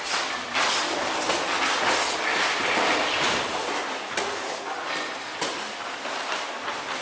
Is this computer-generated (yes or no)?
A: no